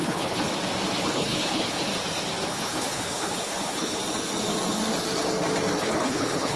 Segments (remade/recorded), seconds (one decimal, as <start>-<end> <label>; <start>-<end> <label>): 0.0-0.5 remade; 0.5-1.0 recorded; 1.0-1.9 remade; 1.9-2.5 recorded; 2.5-4.0 remade; 4.0-5.8 recorded; 5.8-6.6 remade